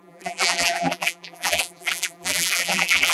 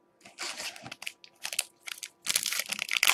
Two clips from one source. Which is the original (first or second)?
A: second